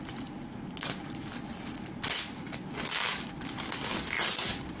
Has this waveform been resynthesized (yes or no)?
no